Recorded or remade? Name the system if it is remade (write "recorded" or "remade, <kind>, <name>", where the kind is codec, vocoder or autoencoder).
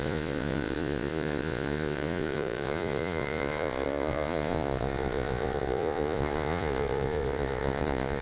remade, vocoder, Vocos